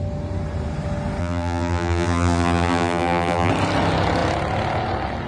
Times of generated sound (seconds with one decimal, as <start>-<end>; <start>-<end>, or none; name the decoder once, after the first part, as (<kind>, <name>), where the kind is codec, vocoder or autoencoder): 1.2-3.5 (vocoder, BigVGAN v2)